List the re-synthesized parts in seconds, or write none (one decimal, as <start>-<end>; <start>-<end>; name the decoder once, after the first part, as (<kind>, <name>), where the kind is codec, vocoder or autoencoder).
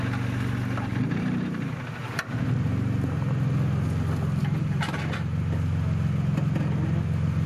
0.9-1.7 (vocoder, BigVGAN v2); 4.4-5.4